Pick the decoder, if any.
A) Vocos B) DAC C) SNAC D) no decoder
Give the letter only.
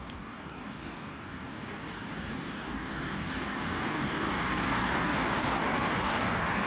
B